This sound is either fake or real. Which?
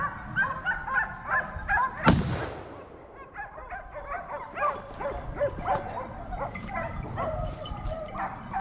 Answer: real